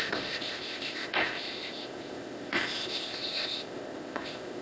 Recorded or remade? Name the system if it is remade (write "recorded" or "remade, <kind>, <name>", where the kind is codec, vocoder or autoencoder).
remade, codec, ZipCodec